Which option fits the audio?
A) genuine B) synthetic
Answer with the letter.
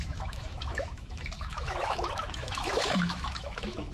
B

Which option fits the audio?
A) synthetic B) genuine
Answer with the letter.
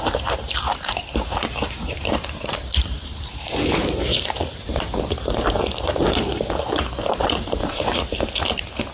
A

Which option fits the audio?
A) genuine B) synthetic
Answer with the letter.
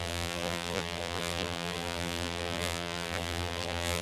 B